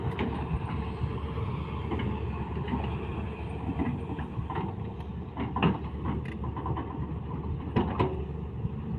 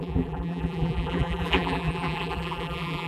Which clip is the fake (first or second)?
second